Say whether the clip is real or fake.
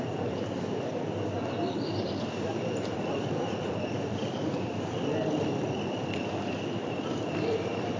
fake